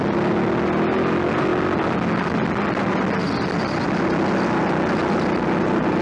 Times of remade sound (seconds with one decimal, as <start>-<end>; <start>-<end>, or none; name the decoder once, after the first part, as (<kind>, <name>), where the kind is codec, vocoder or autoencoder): none